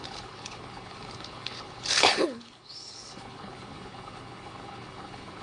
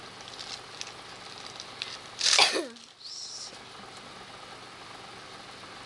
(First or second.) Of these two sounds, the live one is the second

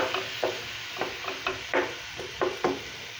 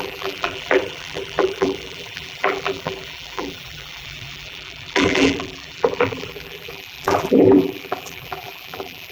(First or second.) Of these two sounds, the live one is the first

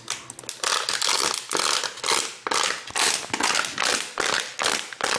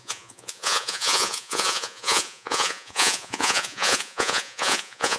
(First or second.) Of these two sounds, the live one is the first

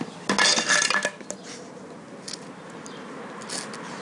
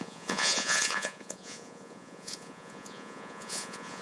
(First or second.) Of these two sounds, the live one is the first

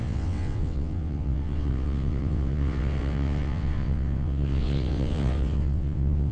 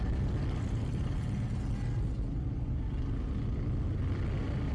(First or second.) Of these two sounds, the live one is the second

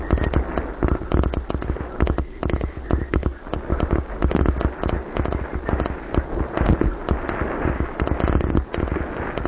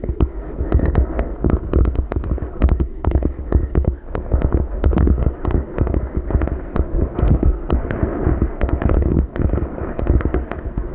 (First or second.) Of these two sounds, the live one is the first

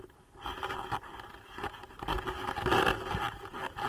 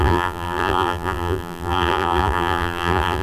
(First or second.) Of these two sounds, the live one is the first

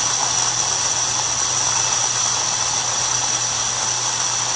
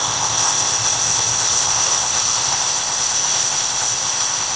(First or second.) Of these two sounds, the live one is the first